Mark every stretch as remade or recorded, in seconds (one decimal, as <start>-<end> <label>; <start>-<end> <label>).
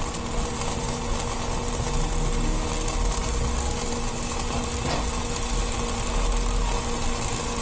0.0-7.6 recorded